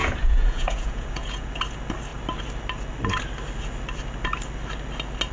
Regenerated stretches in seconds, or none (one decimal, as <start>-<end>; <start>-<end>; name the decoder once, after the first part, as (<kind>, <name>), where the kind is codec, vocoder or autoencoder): 0.0-1.5 (vocoder, Vocos)